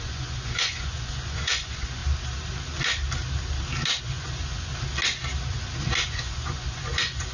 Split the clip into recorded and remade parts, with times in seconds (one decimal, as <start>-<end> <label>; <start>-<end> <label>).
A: 0.0-2.0 remade; 2.0-4.0 recorded; 4.0-4.7 remade; 4.7-6.1 recorded; 6.1-7.3 remade